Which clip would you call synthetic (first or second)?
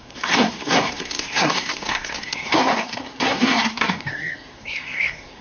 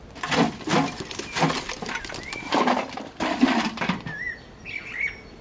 first